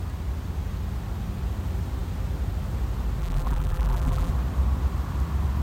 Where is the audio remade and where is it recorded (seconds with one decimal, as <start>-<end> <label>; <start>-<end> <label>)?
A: 0.0-3.2 recorded; 3.2-4.3 remade; 4.3-5.6 recorded